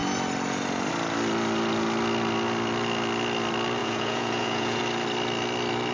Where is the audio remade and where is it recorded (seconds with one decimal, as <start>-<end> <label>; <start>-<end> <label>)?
0.0-3.8 recorded; 3.8-4.8 remade; 4.8-5.9 recorded